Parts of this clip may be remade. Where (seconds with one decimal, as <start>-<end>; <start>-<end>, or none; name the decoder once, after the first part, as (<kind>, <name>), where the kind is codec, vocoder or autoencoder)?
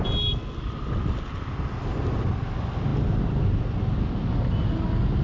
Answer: none